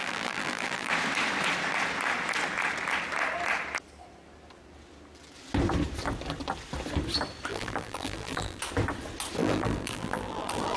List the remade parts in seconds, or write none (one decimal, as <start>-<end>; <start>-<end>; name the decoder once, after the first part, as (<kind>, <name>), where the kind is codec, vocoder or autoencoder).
0.0-0.9 (vocoder, BigVGAN v2); 7.5-8.6; 9.4-10.8